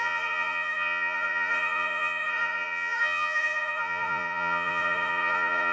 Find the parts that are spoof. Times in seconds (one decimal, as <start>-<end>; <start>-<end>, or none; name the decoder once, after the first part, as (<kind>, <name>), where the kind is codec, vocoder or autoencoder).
0.0-5.7 (vocoder, Vocos)